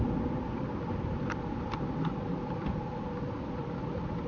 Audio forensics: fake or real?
fake